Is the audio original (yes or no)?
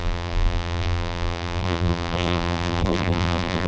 no